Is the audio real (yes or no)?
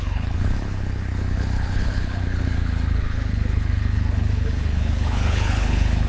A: no